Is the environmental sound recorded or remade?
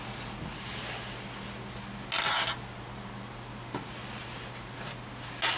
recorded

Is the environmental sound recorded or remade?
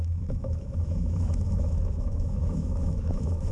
remade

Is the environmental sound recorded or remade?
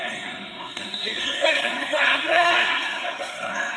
remade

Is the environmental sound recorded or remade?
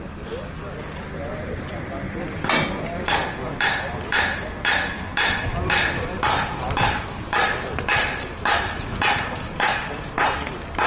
recorded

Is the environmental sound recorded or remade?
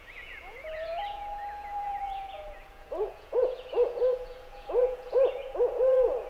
remade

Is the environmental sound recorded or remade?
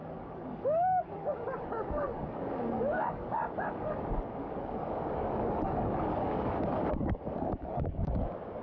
remade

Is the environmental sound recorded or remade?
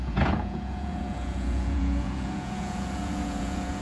remade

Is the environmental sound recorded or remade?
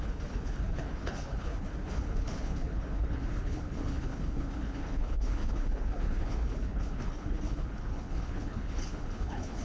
remade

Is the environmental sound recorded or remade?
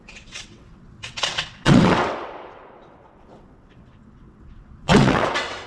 remade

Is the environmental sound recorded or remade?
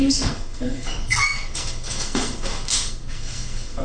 remade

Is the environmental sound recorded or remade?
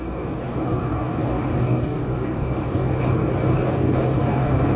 remade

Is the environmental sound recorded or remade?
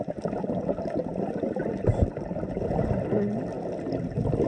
recorded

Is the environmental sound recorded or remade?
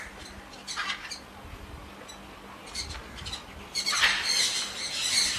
recorded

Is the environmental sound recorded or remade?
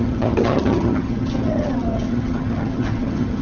remade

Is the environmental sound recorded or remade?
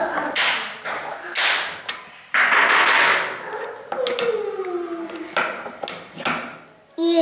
recorded